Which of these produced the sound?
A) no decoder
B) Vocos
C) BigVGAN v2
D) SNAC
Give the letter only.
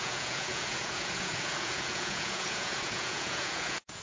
B